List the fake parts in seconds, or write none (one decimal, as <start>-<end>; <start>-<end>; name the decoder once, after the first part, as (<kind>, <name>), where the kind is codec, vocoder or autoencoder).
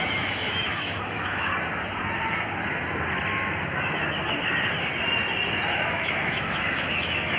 0.0-1.5 (autoencoder, DAC-VAE); 5.9-7.4